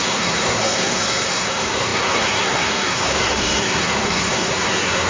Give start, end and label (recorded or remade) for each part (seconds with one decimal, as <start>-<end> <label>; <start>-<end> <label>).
0.0-5.1 remade